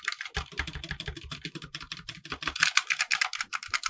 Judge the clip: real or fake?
fake